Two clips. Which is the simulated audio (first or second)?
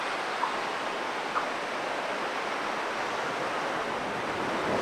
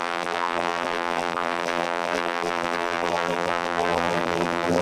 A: second